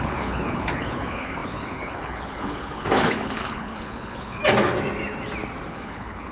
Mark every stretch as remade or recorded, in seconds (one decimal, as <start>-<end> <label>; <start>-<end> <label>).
0.0-4.4 remade; 4.4-5.7 recorded; 5.7-6.3 remade